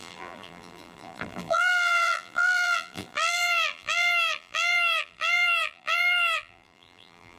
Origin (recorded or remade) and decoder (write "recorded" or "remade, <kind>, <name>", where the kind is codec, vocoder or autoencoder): remade, vocoder, BigVGAN v2